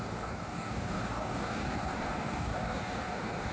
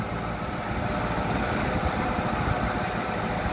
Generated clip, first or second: first